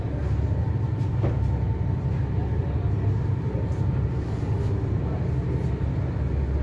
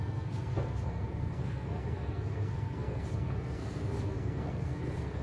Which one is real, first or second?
first